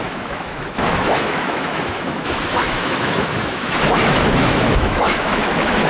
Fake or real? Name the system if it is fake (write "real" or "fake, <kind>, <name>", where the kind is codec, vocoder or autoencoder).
fake, autoencoder, DAC-VAE